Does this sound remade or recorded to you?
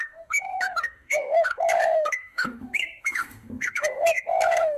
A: remade